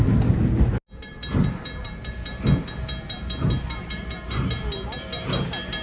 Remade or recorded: recorded